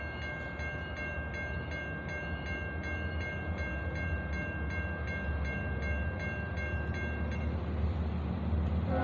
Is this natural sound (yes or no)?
yes